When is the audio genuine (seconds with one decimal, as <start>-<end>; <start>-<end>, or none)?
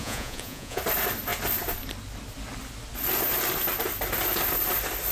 0.8-5.1